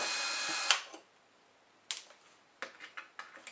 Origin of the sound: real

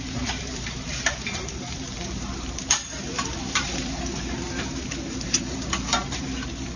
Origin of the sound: fake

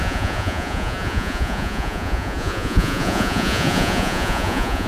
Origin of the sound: fake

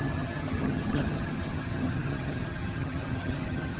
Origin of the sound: fake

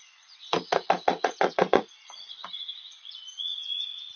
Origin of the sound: fake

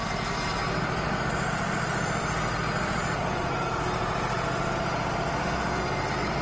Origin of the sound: real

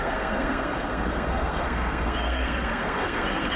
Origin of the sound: fake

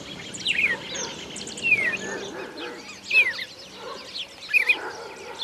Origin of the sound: real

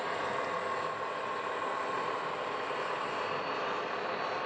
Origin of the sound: real